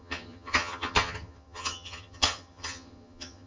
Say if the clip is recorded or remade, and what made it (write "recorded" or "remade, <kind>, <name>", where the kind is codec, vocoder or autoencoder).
remade, vocoder, HiFi-GAN